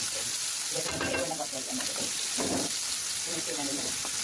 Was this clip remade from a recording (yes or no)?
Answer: no